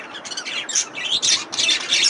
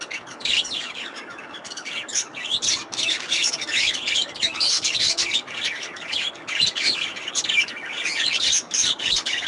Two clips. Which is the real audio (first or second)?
first